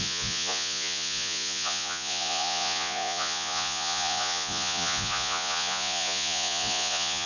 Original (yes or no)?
no